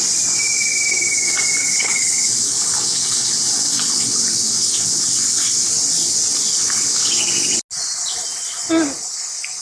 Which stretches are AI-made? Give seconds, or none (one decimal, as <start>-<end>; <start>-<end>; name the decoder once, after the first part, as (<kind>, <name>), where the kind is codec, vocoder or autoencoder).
1.6-5.7 (codec, HILCodec); 6.5-7.1